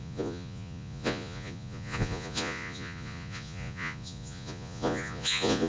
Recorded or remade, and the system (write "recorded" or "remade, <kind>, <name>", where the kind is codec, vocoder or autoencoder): remade, vocoder, Vocos